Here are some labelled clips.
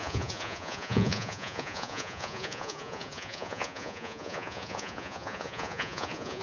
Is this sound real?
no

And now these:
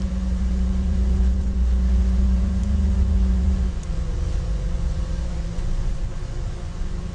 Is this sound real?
no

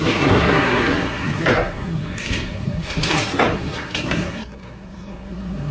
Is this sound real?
no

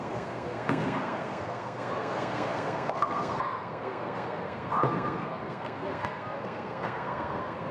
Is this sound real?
no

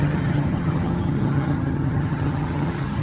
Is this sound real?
no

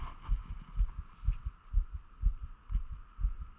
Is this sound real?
yes